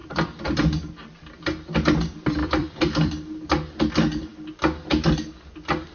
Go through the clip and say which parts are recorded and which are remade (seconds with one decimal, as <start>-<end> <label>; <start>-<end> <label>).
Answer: 0.0-0.9 remade; 0.9-2.4 recorded; 2.4-3.5 remade; 3.5-5.9 recorded

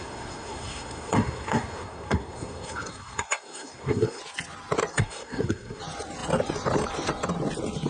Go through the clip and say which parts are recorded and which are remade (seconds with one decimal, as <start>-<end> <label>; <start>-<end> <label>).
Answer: 0.0-4.2 remade; 4.2-4.9 recorded; 4.9-5.8 remade; 5.8-7.9 recorded

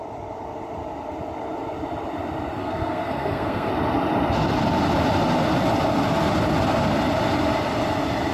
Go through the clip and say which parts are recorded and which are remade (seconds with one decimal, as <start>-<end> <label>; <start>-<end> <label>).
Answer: 0.0-2.6 recorded; 2.6-3.7 remade; 3.7-8.3 recorded

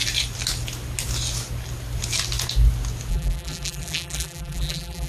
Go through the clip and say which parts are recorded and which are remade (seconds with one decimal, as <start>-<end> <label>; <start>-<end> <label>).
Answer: 0.0-3.1 recorded; 3.1-5.1 remade

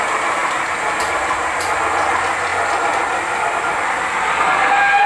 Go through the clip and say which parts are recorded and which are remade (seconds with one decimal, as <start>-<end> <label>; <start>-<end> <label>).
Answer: 0.0-0.4 recorded; 0.4-1.8 remade; 1.8-5.1 recorded

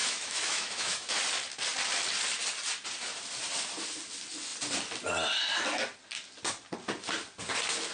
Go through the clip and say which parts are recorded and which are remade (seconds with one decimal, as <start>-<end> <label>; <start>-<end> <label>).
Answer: 0.0-1.2 remade; 1.2-7.9 recorded